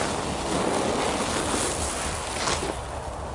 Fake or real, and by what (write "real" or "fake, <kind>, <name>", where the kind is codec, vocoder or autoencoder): real